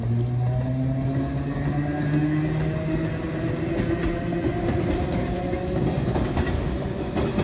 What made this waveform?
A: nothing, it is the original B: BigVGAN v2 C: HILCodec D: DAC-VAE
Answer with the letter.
A